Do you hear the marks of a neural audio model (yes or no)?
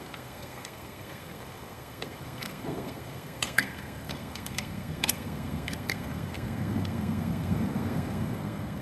yes